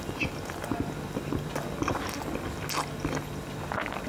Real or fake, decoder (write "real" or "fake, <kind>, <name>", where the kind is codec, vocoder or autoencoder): real